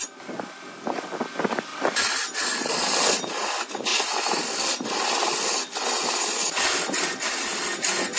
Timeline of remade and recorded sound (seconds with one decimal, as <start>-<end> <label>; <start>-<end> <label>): 0.0-8.2 recorded